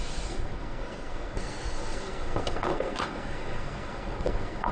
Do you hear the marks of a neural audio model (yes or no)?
yes